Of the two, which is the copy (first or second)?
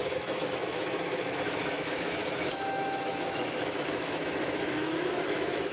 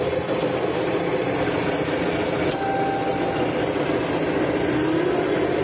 first